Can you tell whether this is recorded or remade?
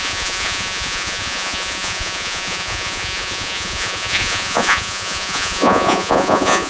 remade